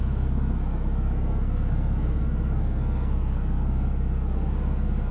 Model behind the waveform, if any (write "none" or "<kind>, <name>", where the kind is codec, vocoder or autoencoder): codec, SNAC